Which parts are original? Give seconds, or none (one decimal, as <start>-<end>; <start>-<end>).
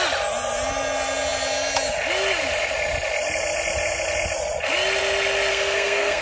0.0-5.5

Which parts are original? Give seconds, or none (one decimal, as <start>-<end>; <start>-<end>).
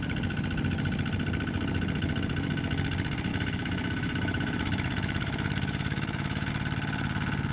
0.0-3.3; 6.5-7.5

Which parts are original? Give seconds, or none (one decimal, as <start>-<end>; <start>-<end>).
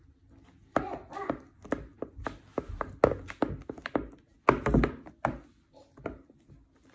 0.0-6.9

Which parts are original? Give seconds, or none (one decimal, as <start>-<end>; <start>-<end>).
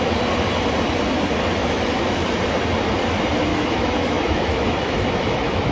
0.0-1.6; 2.2-3.5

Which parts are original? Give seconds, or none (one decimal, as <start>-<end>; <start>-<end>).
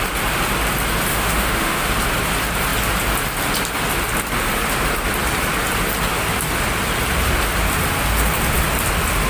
0.0-1.1; 1.9-9.3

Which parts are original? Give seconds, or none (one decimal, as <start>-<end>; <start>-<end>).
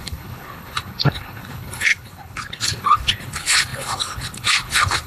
none